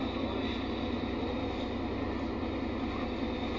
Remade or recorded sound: recorded